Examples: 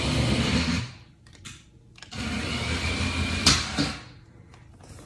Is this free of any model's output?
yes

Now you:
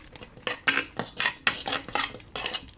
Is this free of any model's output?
yes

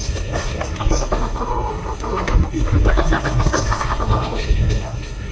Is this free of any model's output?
no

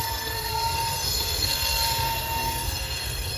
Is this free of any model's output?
no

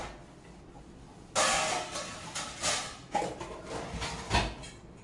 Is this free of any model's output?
yes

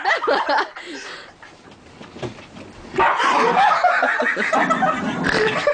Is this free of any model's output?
yes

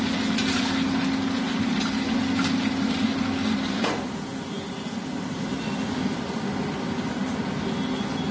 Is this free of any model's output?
yes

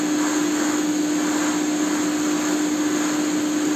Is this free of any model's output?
yes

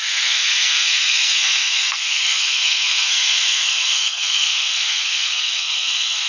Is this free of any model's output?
no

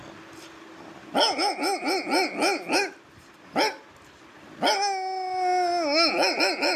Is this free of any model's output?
yes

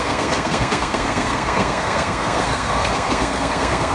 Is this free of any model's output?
no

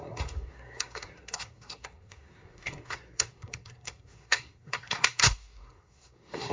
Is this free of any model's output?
no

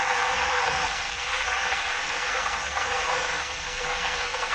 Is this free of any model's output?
no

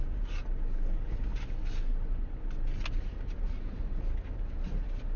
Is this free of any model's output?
yes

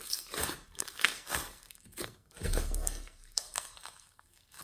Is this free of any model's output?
no